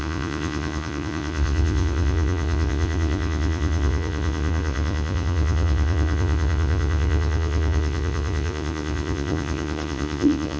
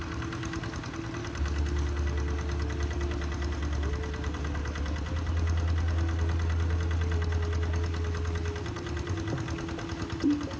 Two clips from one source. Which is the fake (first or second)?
first